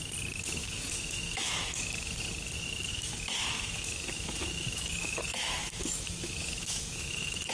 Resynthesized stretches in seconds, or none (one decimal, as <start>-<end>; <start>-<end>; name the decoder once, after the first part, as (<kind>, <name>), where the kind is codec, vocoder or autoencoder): 0.6-2.1 (autoencoder, DAC-VAE); 2.9-7.5